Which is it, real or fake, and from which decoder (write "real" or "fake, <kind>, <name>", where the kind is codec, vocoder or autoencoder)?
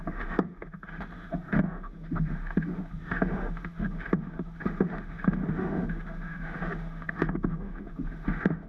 fake, autoencoder, DAC-VAE